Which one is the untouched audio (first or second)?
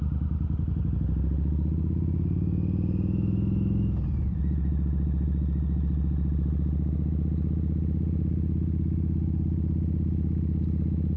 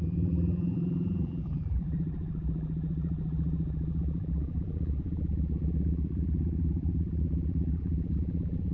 first